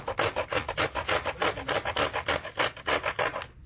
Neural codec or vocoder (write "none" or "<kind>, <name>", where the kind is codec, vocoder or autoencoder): none